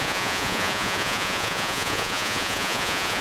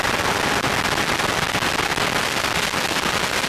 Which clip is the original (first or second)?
second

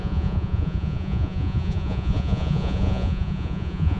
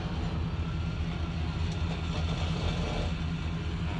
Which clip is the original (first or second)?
second